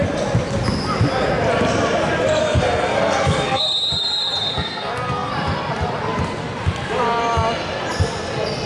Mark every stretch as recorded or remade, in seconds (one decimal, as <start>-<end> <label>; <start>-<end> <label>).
0.0-2.4 recorded; 2.4-3.6 remade; 3.6-4.5 recorded; 4.5-5.3 remade; 5.3-8.7 recorded